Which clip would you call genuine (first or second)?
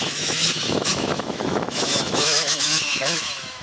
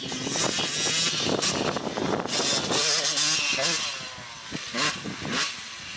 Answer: second